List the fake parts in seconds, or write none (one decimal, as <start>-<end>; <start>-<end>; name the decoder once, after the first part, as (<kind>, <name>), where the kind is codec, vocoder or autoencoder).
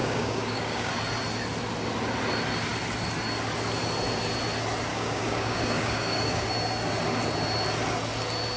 0.0-0.9 (codec, DAC); 4.9-6.5